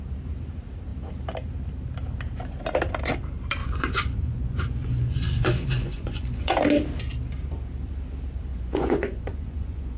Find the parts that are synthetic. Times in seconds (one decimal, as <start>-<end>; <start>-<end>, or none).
3.6-6.5; 8.5-10.0